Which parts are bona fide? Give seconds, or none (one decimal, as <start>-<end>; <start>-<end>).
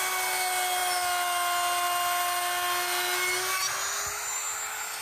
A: 0.0-5.0